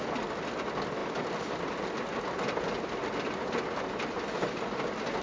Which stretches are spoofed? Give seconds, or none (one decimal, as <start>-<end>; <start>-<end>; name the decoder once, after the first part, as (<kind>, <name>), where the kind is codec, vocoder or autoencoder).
none